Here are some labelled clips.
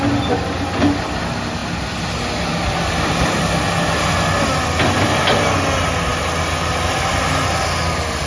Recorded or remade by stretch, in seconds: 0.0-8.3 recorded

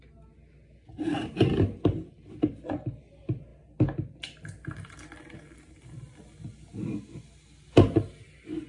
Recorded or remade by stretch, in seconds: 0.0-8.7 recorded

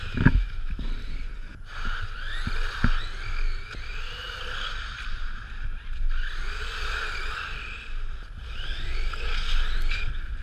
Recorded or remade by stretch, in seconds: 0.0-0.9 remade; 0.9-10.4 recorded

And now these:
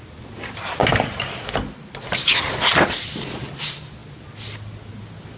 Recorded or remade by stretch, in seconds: 0.0-5.4 recorded

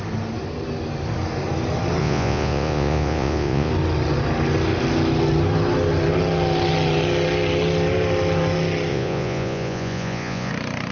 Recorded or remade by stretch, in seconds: 0.0-2.0 recorded; 2.0-3.7 remade; 3.7-8.9 recorded; 8.9-10.5 remade; 10.5-10.9 recorded

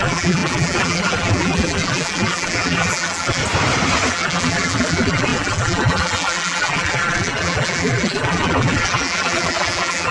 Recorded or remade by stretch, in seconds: 0.0-3.4 remade; 3.4-4.1 recorded; 4.1-10.1 remade

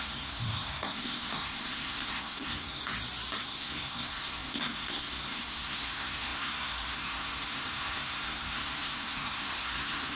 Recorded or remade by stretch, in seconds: 0.0-2.8 remade; 2.8-3.4 recorded; 3.4-10.2 remade

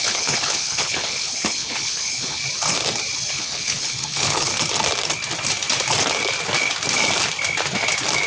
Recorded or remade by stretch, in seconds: 0.0-2.4 remade; 2.4-3.3 recorded; 3.3-4.5 remade; 4.5-8.3 recorded